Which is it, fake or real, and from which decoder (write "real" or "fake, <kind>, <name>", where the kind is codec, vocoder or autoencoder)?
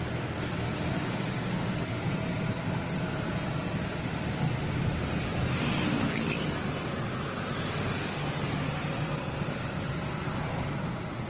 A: real